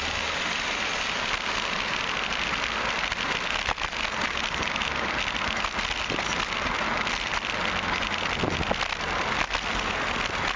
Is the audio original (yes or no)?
yes